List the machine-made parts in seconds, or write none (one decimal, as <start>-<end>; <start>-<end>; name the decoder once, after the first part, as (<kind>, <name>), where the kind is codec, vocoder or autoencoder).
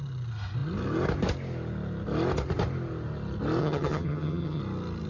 3.6-4.6 (vocoder, HiFi-GAN)